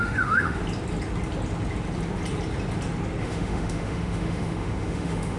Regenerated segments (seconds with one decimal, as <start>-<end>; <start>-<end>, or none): 0.0-0.6; 3.2-5.4